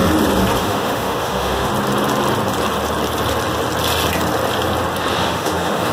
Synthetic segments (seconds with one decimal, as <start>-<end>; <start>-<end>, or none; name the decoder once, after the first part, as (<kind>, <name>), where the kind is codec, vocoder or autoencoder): 0.6-1.7 (autoencoder, DAC-VAE); 5.1-5.9